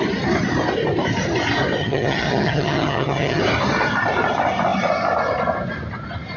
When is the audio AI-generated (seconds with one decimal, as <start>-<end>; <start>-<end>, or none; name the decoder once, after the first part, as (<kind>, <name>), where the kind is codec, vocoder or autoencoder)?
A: 1.8-3.4 (vocoder, HiFi-GAN)